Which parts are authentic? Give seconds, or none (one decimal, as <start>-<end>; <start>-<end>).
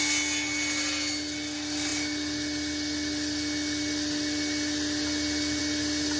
0.0-6.2